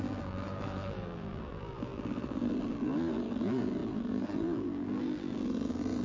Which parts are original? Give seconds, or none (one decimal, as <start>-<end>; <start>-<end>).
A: none